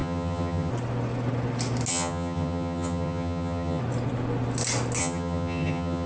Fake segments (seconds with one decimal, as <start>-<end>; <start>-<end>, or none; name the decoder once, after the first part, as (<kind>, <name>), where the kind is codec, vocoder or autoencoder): 0.0-0.7 (vocoder, HiFi-GAN); 1.9-3.8; 5.0-6.1